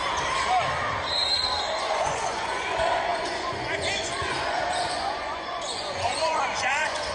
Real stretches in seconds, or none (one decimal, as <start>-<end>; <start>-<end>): 0.0-1.8